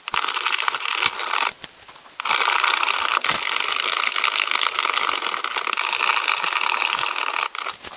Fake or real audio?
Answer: real